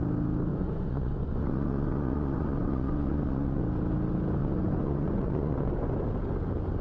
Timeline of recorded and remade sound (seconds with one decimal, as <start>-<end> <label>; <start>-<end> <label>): 0.0-0.5 recorded; 0.5-3.6 remade; 3.6-4.4 recorded; 4.4-5.9 remade; 5.9-6.8 recorded